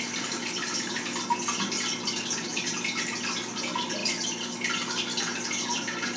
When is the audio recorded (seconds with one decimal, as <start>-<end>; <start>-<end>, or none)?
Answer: 0.0-6.2